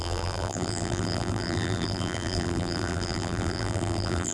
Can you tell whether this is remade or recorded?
remade